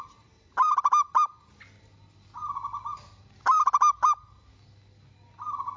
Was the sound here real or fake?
real